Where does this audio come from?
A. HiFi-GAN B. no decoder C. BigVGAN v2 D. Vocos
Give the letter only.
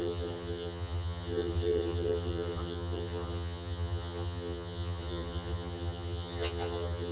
A